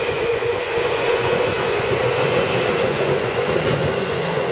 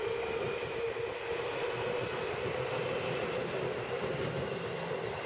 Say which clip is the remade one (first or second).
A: first